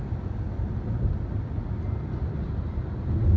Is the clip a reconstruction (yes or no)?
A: no